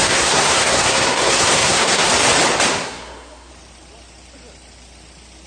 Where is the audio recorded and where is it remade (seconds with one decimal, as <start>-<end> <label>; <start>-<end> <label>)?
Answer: 0.0-2.1 remade; 2.1-2.7 recorded; 2.7-3.5 remade; 3.5-5.5 recorded